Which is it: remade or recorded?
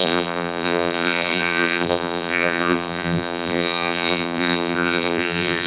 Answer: remade